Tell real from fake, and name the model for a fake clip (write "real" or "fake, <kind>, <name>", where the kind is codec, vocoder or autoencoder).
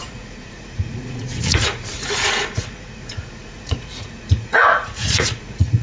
fake, vocoder, Vocos